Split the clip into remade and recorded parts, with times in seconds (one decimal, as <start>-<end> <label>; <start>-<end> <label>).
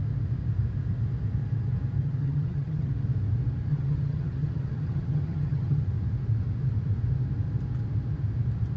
0.0-2.0 recorded; 2.0-2.9 remade; 2.9-3.7 recorded; 3.7-5.8 remade; 5.8-8.8 recorded